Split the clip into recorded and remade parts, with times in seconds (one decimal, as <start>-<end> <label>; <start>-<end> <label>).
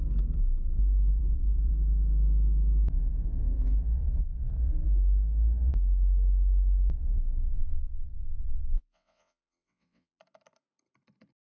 0.0-7.5 recorded; 7.5-10.2 remade; 10.2-11.4 recorded